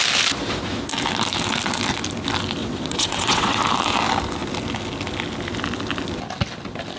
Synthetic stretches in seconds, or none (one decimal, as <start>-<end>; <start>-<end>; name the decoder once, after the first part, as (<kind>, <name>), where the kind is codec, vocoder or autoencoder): 2.6-3.6 (vocoder, WaveNeXt)